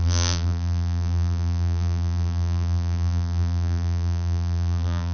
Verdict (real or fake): fake